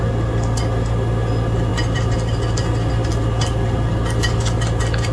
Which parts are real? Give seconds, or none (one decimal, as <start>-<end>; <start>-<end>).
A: 0.0-5.1